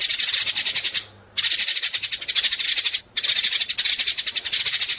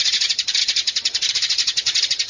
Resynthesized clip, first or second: second